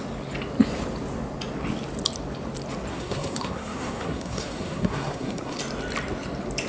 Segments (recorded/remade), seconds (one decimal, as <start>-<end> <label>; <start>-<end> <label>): 0.0-2.9 recorded; 2.9-5.6 remade; 5.6-6.7 recorded